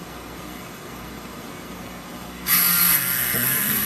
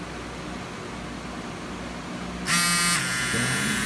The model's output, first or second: first